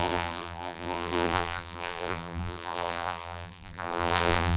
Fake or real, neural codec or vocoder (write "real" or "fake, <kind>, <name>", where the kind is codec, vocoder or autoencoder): fake, vocoder, BigVGAN v2